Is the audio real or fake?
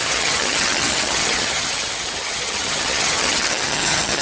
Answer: fake